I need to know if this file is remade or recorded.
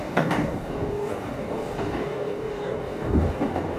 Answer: remade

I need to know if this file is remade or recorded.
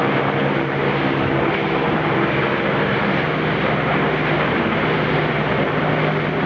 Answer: recorded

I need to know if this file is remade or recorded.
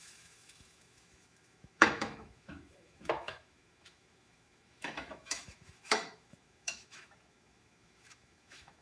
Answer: remade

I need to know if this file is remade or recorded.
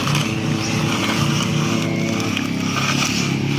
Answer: recorded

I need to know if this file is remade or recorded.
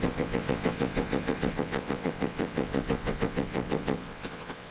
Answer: remade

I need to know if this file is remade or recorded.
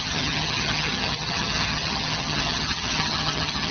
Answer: remade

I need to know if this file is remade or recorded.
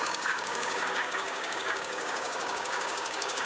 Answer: remade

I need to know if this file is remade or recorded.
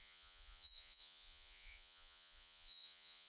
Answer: remade